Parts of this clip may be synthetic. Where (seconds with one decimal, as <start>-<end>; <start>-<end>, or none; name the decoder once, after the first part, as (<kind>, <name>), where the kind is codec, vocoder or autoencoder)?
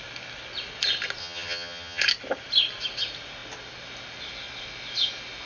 1.2-2.0 (vocoder, HiFi-GAN)